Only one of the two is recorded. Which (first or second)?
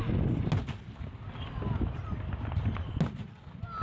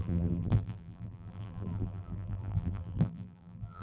first